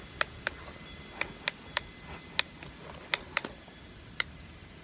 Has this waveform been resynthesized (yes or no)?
no